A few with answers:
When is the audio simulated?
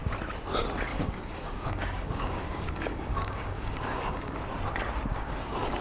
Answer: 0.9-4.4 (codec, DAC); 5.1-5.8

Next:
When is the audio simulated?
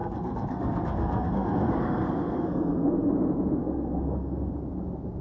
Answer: 0.0-3.1 (codec, SNAC); 3.6-4.5